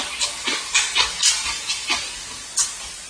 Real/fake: real